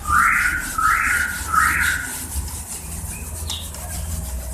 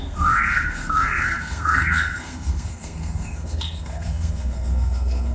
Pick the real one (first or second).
first